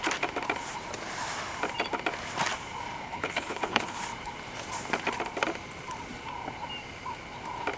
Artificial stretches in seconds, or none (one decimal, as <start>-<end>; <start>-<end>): 3.0-4.0

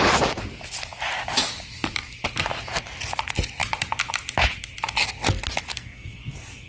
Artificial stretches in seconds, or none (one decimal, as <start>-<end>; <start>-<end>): 5.7-6.7